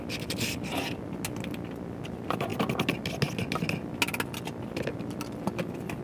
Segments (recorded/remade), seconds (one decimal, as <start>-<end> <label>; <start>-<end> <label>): 0.0-6.0 recorded

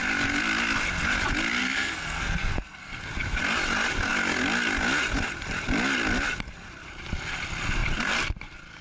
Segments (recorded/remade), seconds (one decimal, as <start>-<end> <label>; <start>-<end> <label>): 0.0-1.6 recorded; 1.6-3.0 remade; 3.0-8.8 recorded

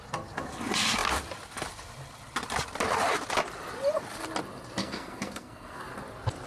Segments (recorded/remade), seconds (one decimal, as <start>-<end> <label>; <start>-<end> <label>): 0.0-4.8 recorded; 4.8-5.8 remade; 5.8-6.5 recorded

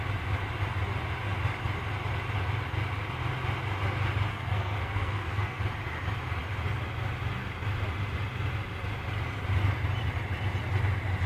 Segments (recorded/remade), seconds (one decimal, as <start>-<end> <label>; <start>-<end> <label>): 0.0-4.3 recorded; 4.3-5.6 remade; 5.6-11.3 recorded

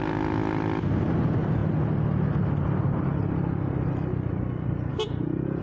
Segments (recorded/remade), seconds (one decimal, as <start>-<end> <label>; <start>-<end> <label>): 0.0-5.6 recorded

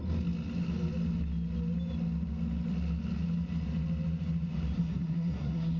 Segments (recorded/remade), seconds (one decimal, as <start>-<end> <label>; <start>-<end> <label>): 0.0-4.8 recorded; 4.8-5.8 remade

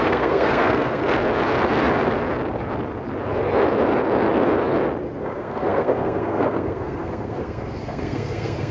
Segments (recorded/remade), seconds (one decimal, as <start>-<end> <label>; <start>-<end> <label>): 0.0-1.0 remade; 1.0-5.2 recorded; 5.2-8.7 remade

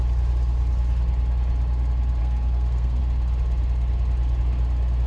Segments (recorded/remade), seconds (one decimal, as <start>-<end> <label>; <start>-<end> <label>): 0.0-2.2 recorded; 2.2-3.0 remade; 3.0-5.1 recorded